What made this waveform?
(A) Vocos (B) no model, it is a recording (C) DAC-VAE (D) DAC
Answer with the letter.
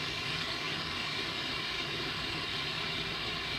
D